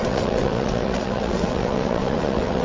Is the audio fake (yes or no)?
yes